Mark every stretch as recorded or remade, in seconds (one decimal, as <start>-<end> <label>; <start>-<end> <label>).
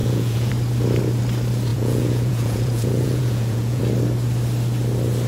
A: 0.0-0.5 remade; 0.5-1.7 recorded; 1.7-3.8 remade; 3.8-5.3 recorded